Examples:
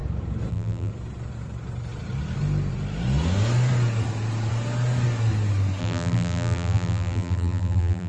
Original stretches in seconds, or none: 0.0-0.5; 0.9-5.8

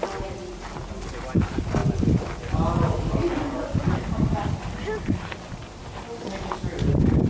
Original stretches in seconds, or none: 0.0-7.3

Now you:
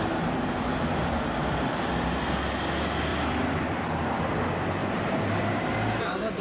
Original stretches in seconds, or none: 0.0-0.9; 2.3-3.1; 4.2-4.8; 6.0-6.4

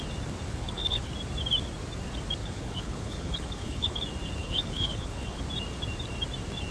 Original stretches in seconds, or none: 0.0-0.5; 1.1-2.4; 4.0-4.4; 5.4-6.7

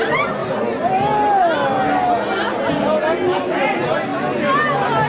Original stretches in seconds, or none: 0.0-5.1